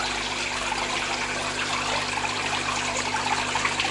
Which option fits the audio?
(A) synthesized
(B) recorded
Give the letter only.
B